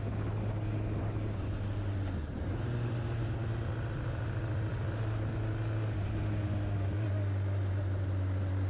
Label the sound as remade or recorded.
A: recorded